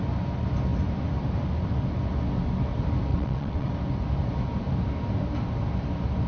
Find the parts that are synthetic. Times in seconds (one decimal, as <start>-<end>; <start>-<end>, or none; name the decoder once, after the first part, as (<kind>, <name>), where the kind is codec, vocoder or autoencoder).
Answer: 3.1-3.7 (vocoder, WaveNeXt)